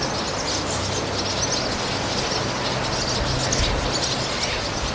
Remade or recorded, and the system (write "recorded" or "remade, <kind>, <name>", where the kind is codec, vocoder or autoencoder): recorded